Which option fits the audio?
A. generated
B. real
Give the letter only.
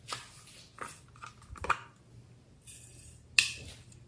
B